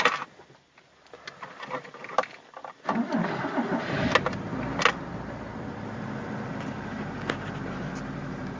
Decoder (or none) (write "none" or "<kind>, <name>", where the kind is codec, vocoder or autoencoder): none